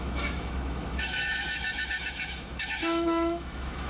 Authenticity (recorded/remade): remade